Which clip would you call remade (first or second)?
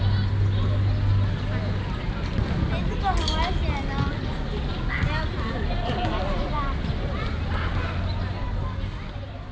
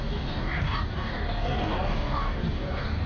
second